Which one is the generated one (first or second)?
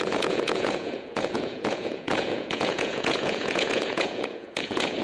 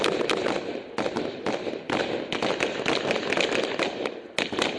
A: first